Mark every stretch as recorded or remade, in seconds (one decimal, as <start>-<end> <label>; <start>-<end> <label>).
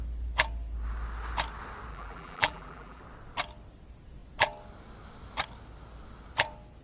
0.0-1.9 recorded; 1.9-3.0 remade; 3.0-6.8 recorded